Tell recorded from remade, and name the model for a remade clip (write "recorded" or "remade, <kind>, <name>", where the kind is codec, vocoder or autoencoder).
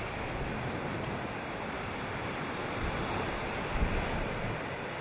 recorded